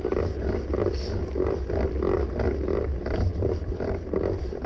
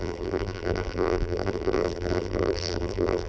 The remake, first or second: second